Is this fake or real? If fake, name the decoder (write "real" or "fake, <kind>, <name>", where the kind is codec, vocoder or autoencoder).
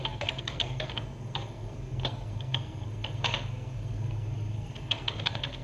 fake, codec, SNAC